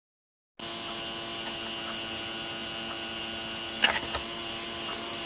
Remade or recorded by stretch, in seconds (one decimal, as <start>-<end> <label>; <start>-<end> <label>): 0.0-5.3 recorded